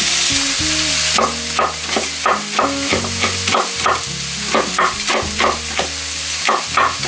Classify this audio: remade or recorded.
recorded